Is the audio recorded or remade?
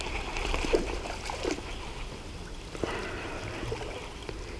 recorded